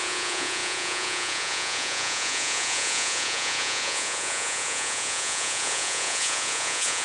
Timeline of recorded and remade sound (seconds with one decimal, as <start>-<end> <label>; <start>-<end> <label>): 0.0-7.0 remade